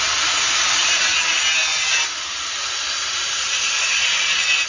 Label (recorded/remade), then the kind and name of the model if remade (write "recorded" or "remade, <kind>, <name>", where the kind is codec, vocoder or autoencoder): recorded